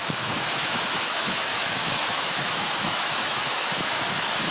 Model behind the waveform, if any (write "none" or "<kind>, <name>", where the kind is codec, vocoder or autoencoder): autoencoder, DAC-VAE